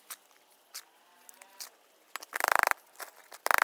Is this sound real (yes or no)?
yes